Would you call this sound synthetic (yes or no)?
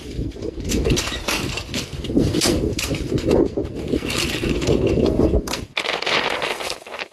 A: yes